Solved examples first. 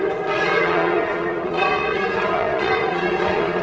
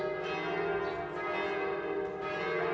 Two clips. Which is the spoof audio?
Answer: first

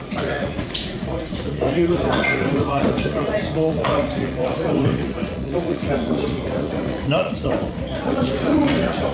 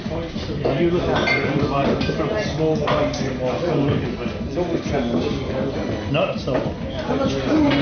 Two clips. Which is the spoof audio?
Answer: first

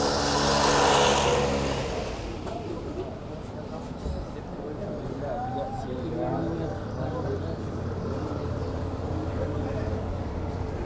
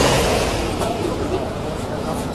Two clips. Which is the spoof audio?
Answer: second